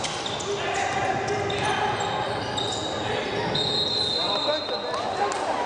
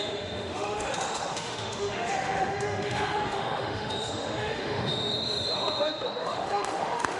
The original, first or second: first